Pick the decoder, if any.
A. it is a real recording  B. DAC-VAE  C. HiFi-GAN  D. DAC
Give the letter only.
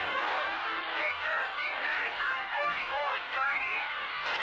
D